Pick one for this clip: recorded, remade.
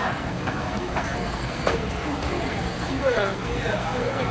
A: remade